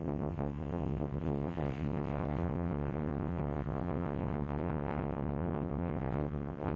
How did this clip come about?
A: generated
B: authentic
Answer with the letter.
A